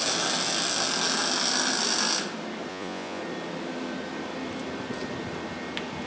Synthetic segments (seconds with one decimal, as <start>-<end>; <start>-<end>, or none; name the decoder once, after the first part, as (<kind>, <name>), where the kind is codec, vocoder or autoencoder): 2.7-3.2 (vocoder, Vocos)